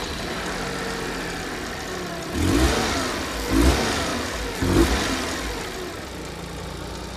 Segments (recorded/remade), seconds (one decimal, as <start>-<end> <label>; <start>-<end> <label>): 0.0-7.2 recorded